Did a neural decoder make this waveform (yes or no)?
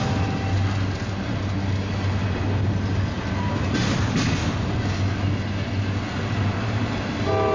no